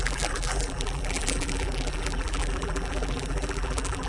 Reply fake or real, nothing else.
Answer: fake